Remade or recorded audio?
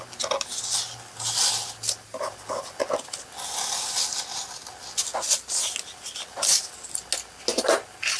recorded